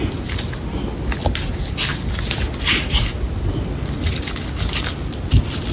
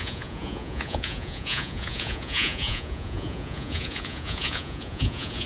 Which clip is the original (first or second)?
first